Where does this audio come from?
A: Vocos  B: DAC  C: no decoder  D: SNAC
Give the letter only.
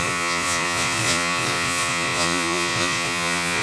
A